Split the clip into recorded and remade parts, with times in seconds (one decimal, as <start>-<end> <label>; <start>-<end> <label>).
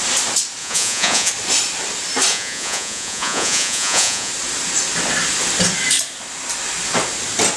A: 0.0-0.6 recorded; 0.6-1.3 remade; 1.3-2.3 recorded; 2.3-4.3 remade; 4.3-7.6 recorded